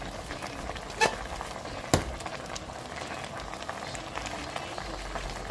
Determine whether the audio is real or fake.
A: real